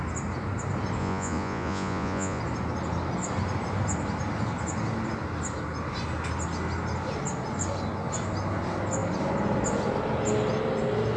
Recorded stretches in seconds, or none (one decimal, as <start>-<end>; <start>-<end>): 0.0-1.0; 2.4-11.2